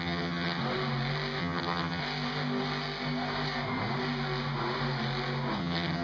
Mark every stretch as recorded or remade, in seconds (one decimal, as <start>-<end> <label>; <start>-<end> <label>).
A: 0.0-0.6 remade; 0.6-1.4 recorded; 1.4-2.0 remade; 2.0-5.6 recorded; 5.6-6.0 remade

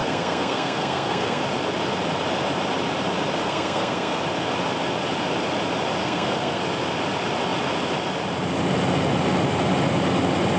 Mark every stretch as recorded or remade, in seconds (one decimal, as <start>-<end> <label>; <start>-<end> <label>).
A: 0.0-1.4 remade; 1.4-3.4 recorded; 3.4-4.2 remade; 4.2-6.0 recorded; 6.0-6.6 remade; 6.6-10.6 recorded

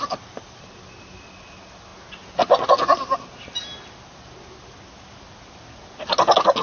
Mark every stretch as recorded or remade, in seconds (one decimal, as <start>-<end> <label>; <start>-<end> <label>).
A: 0.0-6.6 recorded

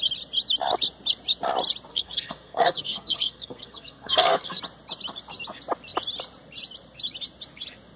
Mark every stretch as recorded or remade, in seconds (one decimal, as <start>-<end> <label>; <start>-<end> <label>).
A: 0.0-1.9 recorded; 1.9-4.6 remade; 4.6-8.0 recorded

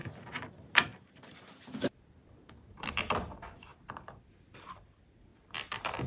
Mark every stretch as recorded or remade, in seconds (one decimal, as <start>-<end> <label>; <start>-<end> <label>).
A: 0.0-0.5 recorded; 0.5-3.7 remade; 3.7-4.4 recorded; 4.4-6.1 remade

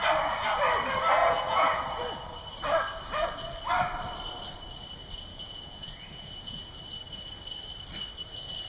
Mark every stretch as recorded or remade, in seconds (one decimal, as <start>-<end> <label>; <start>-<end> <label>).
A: 0.0-1.2 recorded; 1.2-2.0 remade; 2.0-5.3 recorded; 5.3-6.8 remade; 6.8-8.7 recorded